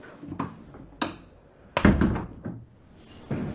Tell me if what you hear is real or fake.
real